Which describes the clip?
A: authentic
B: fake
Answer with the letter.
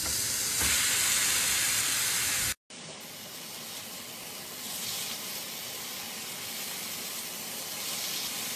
A